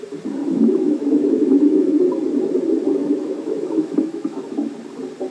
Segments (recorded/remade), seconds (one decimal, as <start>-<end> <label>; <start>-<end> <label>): 0.0-0.4 recorded; 0.4-2.0 remade; 2.0-3.0 recorded; 3.0-4.7 remade; 4.7-5.3 recorded